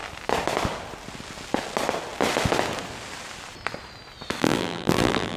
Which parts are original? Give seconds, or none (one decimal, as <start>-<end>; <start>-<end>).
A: 0.0-4.4